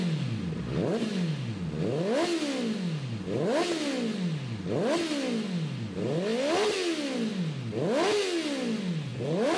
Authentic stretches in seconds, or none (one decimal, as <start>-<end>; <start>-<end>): 0.0-9.1